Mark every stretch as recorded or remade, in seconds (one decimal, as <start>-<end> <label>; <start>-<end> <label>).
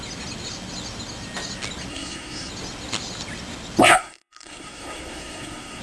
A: 0.0-1.9 recorded; 1.9-2.5 remade; 2.5-3.8 recorded; 3.8-5.8 remade